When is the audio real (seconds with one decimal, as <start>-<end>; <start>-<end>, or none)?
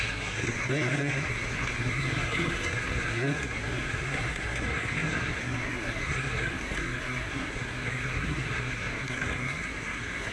none